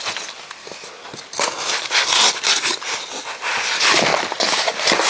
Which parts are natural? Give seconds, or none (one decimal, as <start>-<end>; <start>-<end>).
0.0-5.1